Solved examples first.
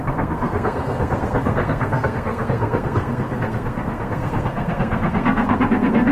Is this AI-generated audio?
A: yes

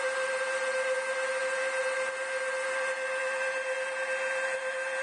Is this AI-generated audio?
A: no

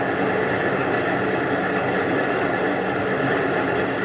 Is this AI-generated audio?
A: no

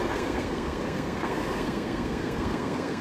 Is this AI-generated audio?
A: yes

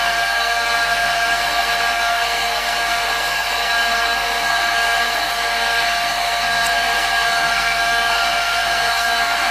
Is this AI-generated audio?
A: yes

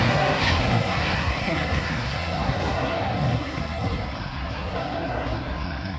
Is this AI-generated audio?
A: yes